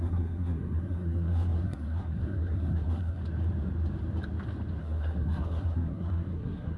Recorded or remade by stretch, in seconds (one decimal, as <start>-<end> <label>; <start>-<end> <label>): 0.0-3.2 remade; 3.2-4.8 recorded; 4.8-6.8 remade